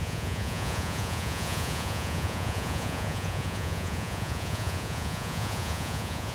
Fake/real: fake